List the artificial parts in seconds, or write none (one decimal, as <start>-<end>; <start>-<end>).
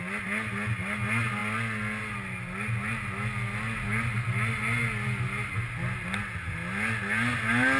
none